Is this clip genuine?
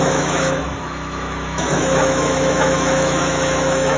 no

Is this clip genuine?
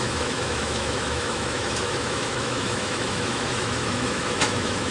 no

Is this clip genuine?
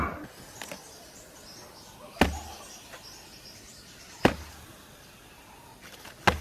yes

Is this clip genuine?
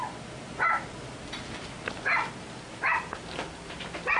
yes